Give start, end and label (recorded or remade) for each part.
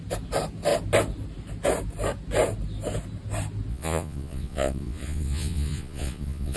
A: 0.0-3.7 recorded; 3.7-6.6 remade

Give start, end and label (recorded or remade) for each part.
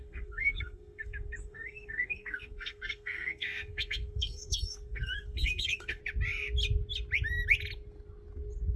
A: 0.0-6.0 remade; 6.0-8.8 recorded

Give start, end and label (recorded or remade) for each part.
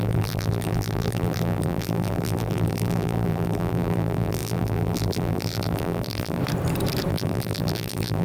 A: 0.0-6.4 remade; 6.4-7.1 recorded; 7.1-8.2 remade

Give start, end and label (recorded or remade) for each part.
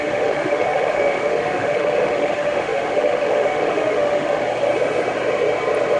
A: 0.0-4.4 remade; 4.4-6.0 recorded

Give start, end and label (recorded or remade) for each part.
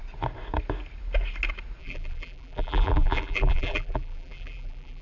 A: 0.0-1.8 recorded; 1.8-5.0 remade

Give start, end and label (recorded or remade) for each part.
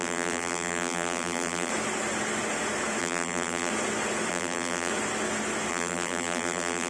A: 0.0-1.7 remade; 1.7-3.0 recorded; 3.0-3.7 remade; 3.7-4.3 recorded; 4.3-4.9 remade; 4.9-5.7 recorded; 5.7-6.9 remade